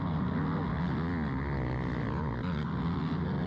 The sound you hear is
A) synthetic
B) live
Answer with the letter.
B